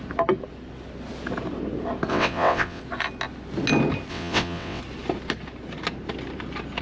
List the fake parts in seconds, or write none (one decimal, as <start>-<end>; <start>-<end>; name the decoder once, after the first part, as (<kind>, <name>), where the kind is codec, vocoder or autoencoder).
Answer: 2.1-2.8 (vocoder, WaveNeXt); 4.1-4.8